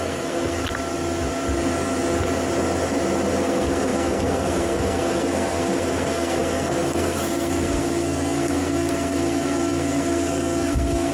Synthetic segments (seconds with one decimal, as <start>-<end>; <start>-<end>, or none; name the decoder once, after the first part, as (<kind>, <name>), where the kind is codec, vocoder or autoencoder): 0.0-0.6 (codec, SNAC); 3.4-11.1